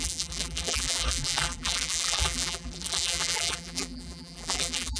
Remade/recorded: remade